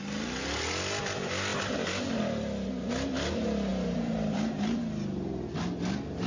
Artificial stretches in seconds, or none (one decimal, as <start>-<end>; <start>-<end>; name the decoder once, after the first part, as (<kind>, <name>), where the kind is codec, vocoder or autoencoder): 3.7-4.8 (vocoder, BigVGAN v2)